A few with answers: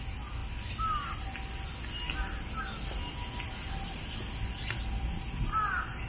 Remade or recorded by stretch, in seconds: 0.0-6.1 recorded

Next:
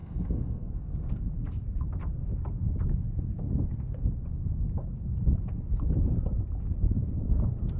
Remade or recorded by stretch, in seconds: 0.0-1.3 remade; 1.3-7.8 recorded

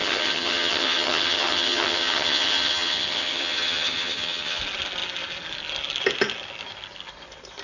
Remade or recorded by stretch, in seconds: 0.0-4.6 remade; 4.6-7.6 recorded

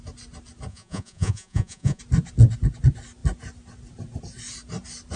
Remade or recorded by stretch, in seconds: 0.0-0.7 recorded; 0.7-2.0 remade; 2.0-5.2 recorded